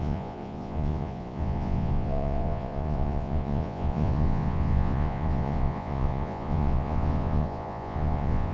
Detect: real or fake fake